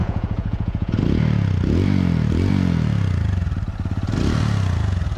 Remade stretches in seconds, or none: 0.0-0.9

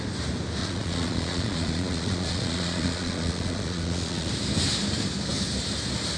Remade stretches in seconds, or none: 0.6-4.3

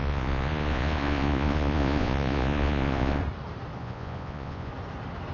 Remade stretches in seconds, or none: 0.0-3.2; 3.8-4.7

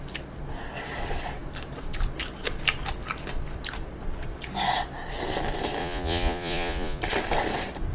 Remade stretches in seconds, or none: 5.8-7.0

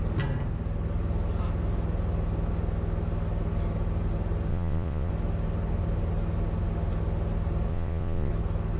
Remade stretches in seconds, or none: 4.5-5.1; 7.7-8.3